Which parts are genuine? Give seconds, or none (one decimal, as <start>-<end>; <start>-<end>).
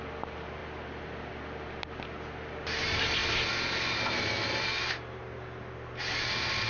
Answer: 0.0-6.7